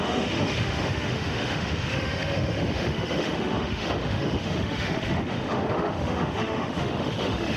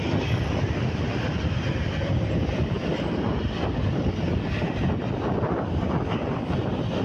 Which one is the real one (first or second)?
second